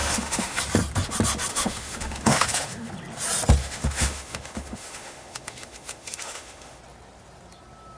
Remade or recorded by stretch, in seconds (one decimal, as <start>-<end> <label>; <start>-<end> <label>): 0.0-0.6 remade; 0.6-1.5 recorded; 1.5-2.9 remade; 2.9-3.6 recorded; 3.6-6.8 remade; 6.8-8.0 recorded